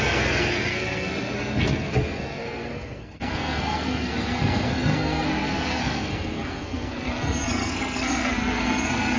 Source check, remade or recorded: remade